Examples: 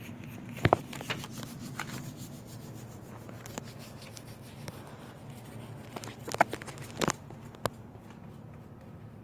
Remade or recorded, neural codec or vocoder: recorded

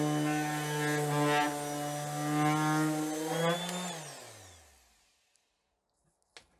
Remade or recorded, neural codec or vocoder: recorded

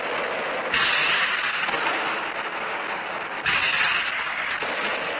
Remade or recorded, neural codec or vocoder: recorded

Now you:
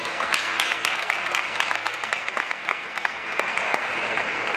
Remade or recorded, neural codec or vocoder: remade, codec, SNAC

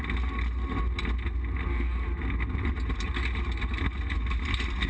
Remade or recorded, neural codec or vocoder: recorded